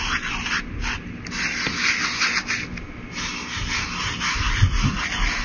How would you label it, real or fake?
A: real